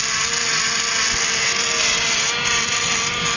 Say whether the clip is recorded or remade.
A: recorded